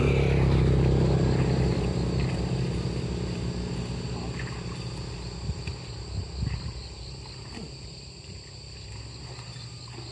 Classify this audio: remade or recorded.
recorded